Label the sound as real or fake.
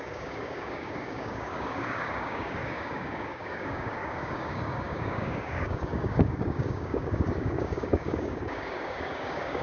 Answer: fake